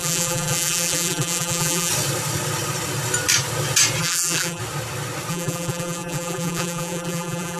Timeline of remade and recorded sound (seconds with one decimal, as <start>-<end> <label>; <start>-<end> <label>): 0.0-1.9 remade; 1.9-4.0 recorded; 4.0-4.6 remade; 4.6-5.3 recorded; 5.3-7.6 remade